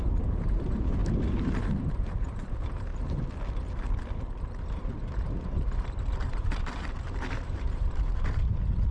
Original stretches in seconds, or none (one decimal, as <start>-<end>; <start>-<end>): 1.0-1.6; 2.9-5.9